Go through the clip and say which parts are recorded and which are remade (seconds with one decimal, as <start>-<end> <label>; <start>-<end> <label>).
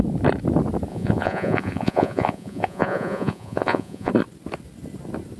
0.0-0.9 recorded; 0.9-4.1 remade; 4.1-5.4 recorded